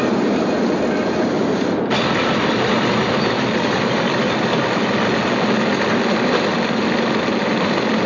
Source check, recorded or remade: recorded